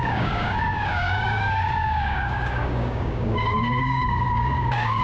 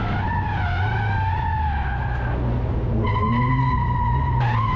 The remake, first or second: first